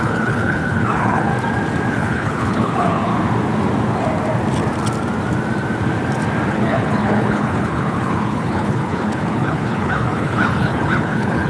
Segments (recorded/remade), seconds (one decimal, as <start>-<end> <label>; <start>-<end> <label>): 0.0-1.3 remade; 1.3-1.9 recorded; 1.9-3.1 remade; 3.1-6.5 recorded; 6.5-11.5 remade